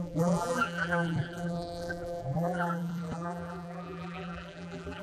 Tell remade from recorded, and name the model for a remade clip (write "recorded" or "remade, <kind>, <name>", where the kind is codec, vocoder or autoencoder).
remade, vocoder, BigVGAN v2